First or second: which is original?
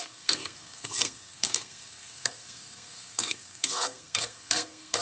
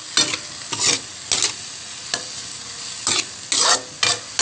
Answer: second